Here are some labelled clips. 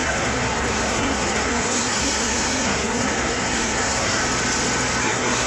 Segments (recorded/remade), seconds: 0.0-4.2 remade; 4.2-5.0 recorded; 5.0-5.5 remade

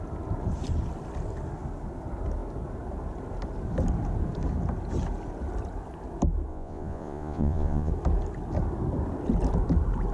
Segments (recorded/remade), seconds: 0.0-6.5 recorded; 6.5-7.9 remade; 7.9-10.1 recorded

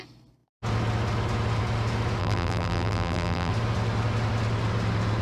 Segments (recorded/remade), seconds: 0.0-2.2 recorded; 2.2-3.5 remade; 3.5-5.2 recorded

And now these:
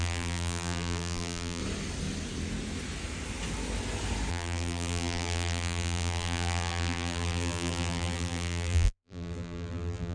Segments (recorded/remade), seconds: 0.0-1.6 remade; 1.6-4.3 recorded; 4.3-10.1 remade

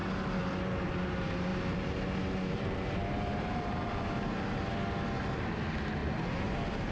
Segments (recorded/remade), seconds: 0.0-1.5 recorded; 1.5-4.7 remade; 4.7-6.0 recorded; 6.0-6.9 remade

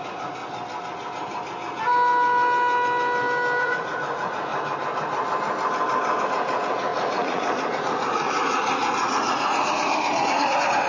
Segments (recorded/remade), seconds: 0.0-0.4 remade; 0.4-3.6 recorded; 3.6-4.5 remade; 4.5-6.2 recorded; 6.2-10.9 remade

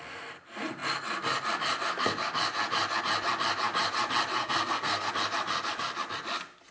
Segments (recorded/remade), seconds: 0.0-4.4 recorded; 4.4-5.1 remade; 5.1-6.7 recorded

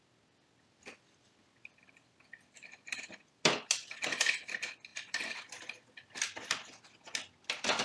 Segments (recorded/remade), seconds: 0.0-7.8 recorded